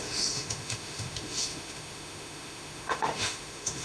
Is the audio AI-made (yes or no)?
yes